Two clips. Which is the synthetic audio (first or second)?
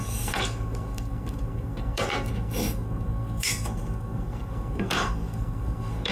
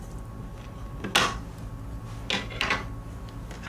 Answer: first